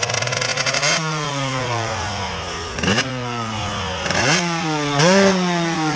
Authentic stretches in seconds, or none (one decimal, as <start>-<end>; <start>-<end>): none